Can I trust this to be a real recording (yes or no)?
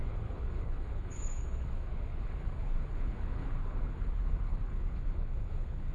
no